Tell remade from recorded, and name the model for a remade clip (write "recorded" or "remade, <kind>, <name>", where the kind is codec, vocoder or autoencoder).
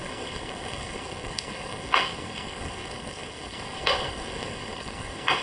remade, codec, SNAC